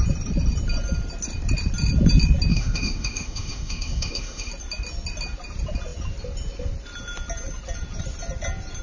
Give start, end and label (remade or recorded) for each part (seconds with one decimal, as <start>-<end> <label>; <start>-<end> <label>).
0.0-2.5 recorded; 2.5-4.5 remade; 4.5-8.8 recorded